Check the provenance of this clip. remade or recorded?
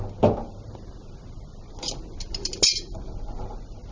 recorded